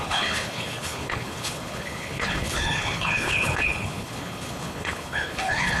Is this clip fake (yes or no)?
yes